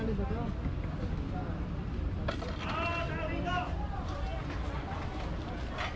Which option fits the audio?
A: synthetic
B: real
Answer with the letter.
B